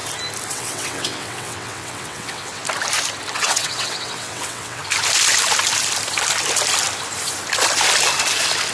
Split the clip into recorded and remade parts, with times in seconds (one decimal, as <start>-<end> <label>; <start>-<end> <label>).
0.0-0.5 recorded; 0.5-2.6 remade; 2.6-3.3 recorded; 3.3-4.8 remade; 4.8-8.7 recorded